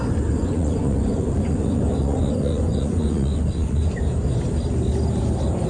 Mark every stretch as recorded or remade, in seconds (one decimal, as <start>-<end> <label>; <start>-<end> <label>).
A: 0.0-0.4 recorded; 0.4-3.8 remade; 3.8-5.7 recorded